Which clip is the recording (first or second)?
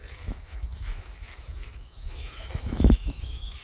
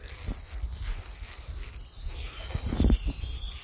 second